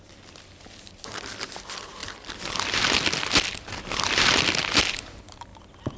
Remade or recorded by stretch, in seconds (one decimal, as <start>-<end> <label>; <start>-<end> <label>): 0.0-6.0 recorded